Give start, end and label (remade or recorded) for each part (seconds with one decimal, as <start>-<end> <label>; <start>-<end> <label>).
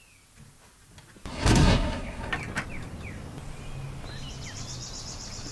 0.0-1.3 recorded; 1.3-2.3 remade; 2.3-5.5 recorded